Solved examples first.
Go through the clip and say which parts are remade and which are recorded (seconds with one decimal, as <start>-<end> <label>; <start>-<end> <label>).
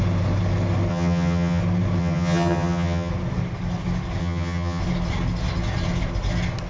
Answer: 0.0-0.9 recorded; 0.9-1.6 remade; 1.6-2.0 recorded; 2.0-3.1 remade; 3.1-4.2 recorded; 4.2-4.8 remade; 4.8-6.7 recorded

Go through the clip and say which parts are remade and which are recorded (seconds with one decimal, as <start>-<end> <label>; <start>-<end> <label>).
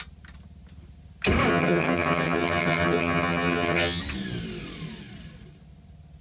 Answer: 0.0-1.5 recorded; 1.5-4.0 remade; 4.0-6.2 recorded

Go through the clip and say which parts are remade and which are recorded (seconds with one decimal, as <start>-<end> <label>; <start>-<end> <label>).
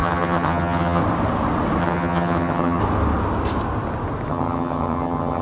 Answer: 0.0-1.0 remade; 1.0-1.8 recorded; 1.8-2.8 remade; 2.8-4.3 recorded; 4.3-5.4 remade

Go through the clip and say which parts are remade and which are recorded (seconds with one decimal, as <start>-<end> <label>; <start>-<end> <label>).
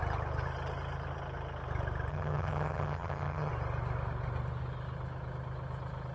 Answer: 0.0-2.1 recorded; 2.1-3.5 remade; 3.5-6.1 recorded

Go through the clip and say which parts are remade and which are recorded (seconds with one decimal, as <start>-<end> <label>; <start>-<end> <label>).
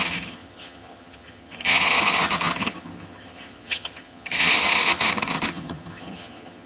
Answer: 0.0-6.7 remade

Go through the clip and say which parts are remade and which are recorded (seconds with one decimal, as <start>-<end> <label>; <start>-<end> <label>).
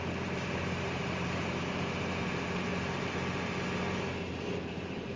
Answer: 0.0-5.2 recorded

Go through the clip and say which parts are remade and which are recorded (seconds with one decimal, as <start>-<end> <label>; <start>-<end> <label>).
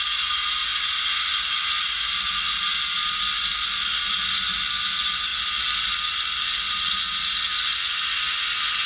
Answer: 0.0-8.9 recorded